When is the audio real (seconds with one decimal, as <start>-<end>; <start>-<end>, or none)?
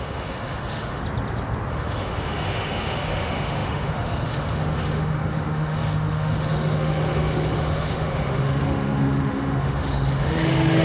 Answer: 1.0-1.7